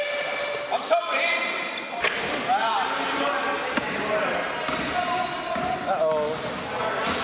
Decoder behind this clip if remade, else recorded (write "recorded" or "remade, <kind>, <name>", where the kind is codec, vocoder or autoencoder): recorded